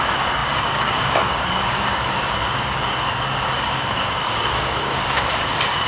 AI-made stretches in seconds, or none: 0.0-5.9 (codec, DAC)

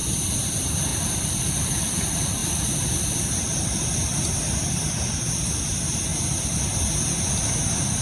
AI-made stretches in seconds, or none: 0.0-6.1 (vocoder, BigVGAN v2)

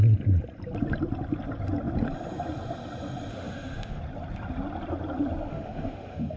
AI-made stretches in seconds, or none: 3.3-4.0 (autoencoder, DAC-VAE); 5.5-6.4

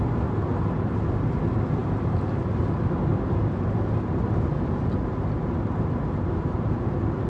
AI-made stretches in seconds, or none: none

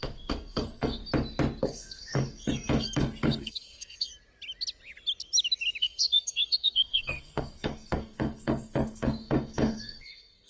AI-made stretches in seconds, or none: 0.0-1.0 (codec, SNAC); 1.6-4.1; 5.8-10.5

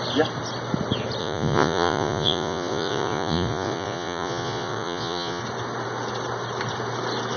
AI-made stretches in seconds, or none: 1.2-5.4 (vocoder, Vocos)